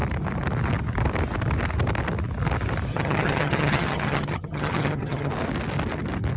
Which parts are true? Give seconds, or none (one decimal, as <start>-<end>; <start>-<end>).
0.0-2.9; 5.3-6.4